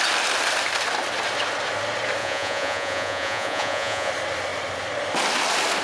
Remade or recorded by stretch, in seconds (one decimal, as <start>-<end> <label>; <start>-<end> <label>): 0.0-2.2 recorded; 2.2-4.1 remade; 4.1-5.8 recorded